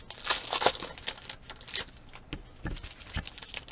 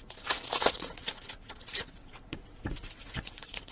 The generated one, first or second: second